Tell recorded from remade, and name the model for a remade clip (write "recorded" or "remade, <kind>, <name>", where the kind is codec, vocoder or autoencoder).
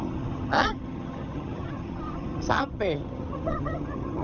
remade, vocoder, HiFi-GAN